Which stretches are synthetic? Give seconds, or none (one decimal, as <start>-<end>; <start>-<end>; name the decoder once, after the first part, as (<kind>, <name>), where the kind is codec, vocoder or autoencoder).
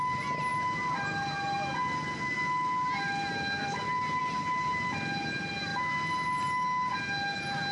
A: none